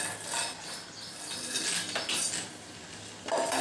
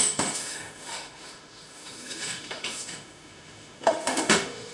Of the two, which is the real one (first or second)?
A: first